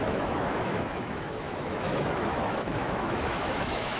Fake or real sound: fake